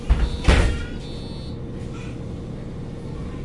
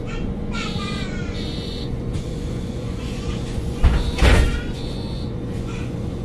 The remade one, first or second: second